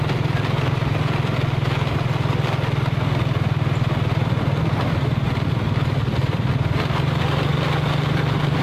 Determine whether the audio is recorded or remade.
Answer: recorded